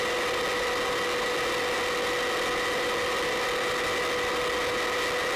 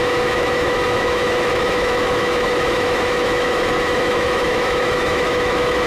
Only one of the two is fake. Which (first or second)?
second